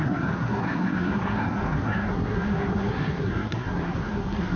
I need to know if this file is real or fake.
fake